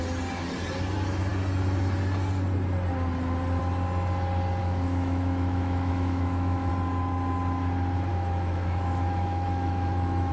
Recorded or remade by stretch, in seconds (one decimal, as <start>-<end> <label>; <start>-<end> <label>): 0.0-4.6 recorded; 4.6-6.7 remade; 6.7-8.1 recorded; 8.1-10.3 remade

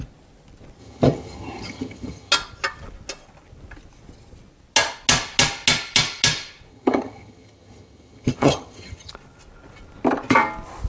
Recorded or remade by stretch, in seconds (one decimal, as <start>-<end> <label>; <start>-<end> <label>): 0.0-0.8 recorded; 0.8-2.3 remade; 2.3-6.7 recorded; 6.7-9.1 remade; 9.1-10.9 recorded

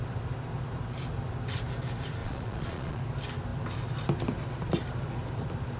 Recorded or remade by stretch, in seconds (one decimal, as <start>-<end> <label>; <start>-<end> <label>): 0.0-2.2 recorded; 2.2-3.0 remade; 3.0-5.8 recorded

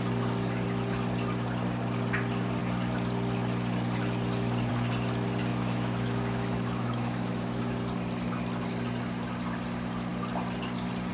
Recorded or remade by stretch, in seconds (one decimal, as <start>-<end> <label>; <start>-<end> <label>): 0.0-5.5 recorded; 5.5-7.6 remade; 7.6-11.1 recorded

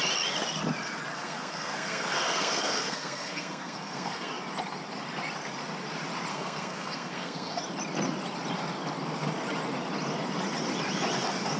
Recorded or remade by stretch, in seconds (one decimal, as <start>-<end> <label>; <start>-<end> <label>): 0.0-1.1 recorded; 1.1-4.3 remade; 4.3-6.3 recorded; 6.3-7.6 remade; 7.6-11.6 recorded

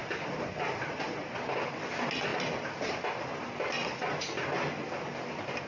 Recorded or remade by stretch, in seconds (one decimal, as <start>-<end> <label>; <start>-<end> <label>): 0.0-1.0 remade; 1.0-2.3 recorded; 2.3-3.2 remade; 3.2-5.7 recorded

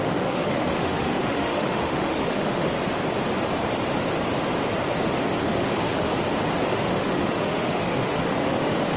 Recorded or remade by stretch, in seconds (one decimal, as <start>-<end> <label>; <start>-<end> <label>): 0.0-2.7 remade; 2.7-5.4 recorded; 5.4-6.1 remade; 6.1-6.7 recorded; 6.7-9.0 remade

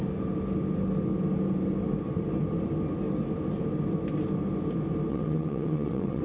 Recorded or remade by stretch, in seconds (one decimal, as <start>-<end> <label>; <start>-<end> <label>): 0.0-5.1 recorded; 5.1-6.2 remade